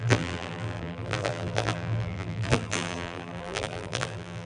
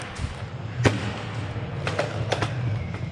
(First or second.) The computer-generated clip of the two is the first